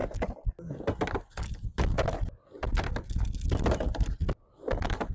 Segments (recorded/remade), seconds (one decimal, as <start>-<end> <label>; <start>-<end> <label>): 0.0-5.1 recorded

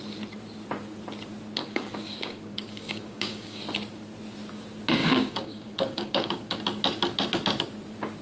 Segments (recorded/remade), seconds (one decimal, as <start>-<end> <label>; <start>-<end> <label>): 0.0-1.6 recorded; 1.6-3.6 remade; 3.6-5.0 recorded; 5.0-6.6 remade; 6.6-8.2 recorded